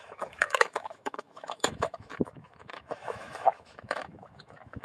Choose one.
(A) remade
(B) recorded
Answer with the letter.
A